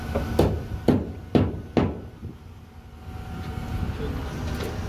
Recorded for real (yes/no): yes